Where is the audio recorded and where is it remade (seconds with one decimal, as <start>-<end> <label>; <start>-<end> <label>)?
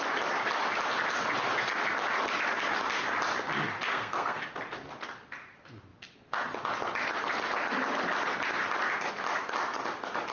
0.0-3.9 recorded; 3.9-4.4 remade; 4.4-10.3 recorded